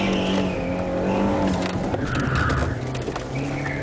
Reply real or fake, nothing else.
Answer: real